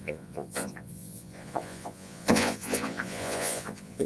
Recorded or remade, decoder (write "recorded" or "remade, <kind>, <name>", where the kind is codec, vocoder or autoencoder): remade, vocoder, Vocos